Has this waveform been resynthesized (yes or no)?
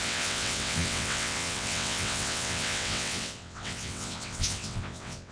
yes